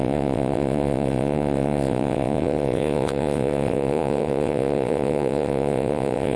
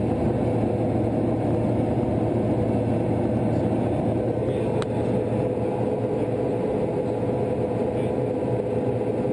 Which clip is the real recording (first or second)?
second